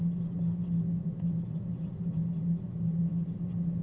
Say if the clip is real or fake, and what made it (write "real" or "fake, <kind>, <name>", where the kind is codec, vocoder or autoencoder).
real